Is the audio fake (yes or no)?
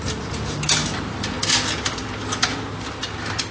no